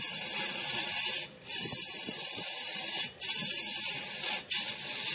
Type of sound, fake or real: fake